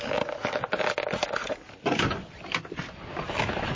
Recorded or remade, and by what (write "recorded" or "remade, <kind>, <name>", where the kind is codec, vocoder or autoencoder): recorded